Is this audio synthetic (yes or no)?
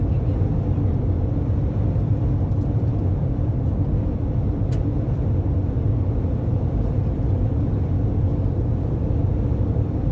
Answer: yes